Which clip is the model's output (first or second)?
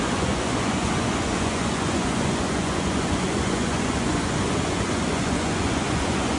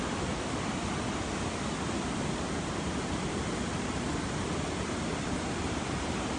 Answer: first